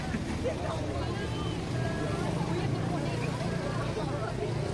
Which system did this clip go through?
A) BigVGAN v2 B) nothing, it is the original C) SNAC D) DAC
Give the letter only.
B